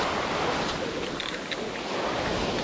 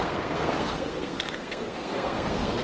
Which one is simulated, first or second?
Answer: second